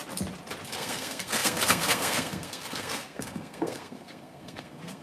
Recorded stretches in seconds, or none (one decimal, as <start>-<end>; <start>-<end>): 0.0-0.7